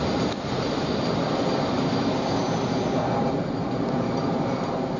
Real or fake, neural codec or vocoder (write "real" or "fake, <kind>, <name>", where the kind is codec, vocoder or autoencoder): real